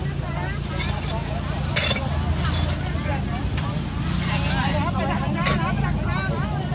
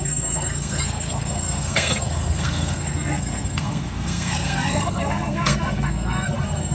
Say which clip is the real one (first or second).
first